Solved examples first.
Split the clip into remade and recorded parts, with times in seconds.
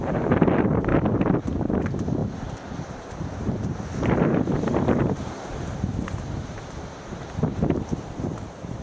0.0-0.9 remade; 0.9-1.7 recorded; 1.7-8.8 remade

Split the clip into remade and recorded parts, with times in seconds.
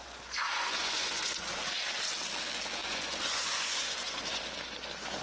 0.0-1.4 remade; 1.4-2.8 recorded; 2.8-4.4 remade; 4.4-5.2 recorded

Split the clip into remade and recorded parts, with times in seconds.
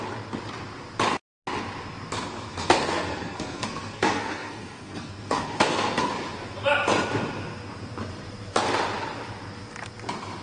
0.0-2.5 recorded; 2.5-6.1 remade; 6.1-10.4 recorded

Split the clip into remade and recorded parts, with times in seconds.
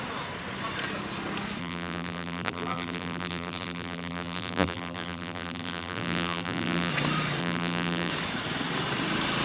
0.0-1.6 recorded; 1.6-6.9 remade; 6.9-7.4 recorded; 7.4-8.1 remade; 8.1-9.4 recorded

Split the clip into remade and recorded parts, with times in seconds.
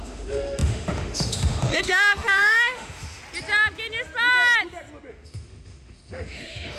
0.0-3.2 remade; 3.2-5.1 recorded; 5.1-6.8 remade